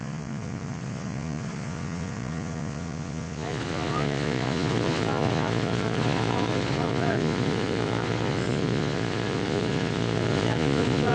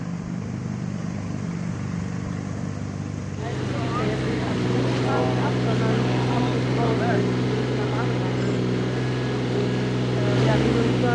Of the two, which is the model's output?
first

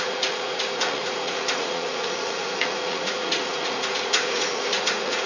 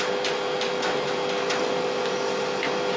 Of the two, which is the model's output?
first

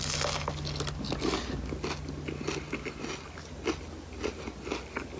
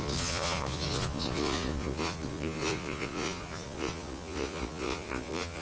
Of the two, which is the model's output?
second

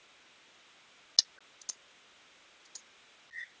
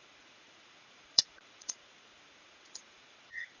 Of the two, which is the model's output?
second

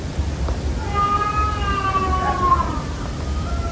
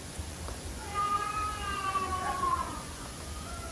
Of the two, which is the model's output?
second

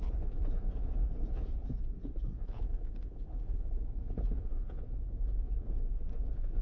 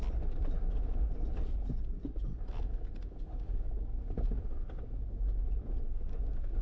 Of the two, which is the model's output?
first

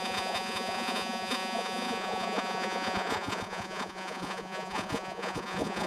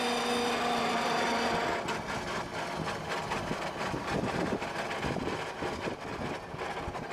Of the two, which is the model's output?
first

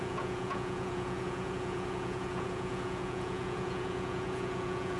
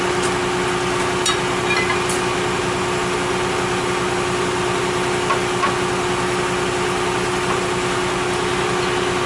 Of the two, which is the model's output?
first